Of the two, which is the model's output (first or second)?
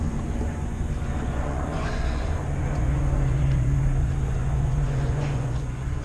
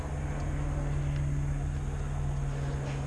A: first